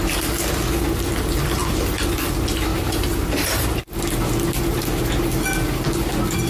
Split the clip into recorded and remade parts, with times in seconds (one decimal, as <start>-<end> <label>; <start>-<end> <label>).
0.0-2.7 recorded; 2.7-3.8 remade; 3.8-6.5 recorded

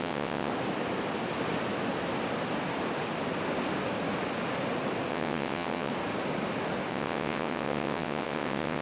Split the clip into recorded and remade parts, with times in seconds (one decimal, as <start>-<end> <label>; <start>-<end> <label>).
0.0-0.5 remade; 0.5-5.1 recorded; 5.1-5.9 remade; 5.9-6.9 recorded; 6.9-8.8 remade

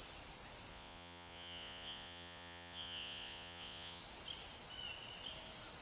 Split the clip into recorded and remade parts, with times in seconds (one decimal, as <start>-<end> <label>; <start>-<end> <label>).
0.0-0.7 recorded; 0.7-4.0 remade; 4.0-5.8 recorded

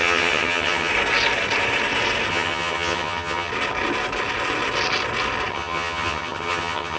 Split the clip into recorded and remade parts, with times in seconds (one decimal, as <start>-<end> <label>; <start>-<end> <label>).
0.0-0.9 remade; 0.9-2.3 recorded; 2.3-3.5 remade; 3.5-5.5 recorded; 5.5-7.0 remade

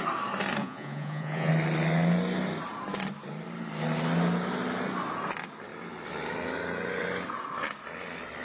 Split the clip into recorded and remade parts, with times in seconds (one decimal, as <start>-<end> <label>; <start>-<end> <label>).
0.0-0.6 recorded; 0.6-1.5 remade; 1.5-8.4 recorded

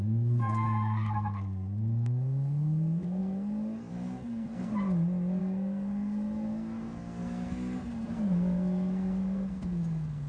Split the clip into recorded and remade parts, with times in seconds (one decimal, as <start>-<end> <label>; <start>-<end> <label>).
0.0-4.7 remade; 4.7-5.4 recorded; 5.4-10.3 remade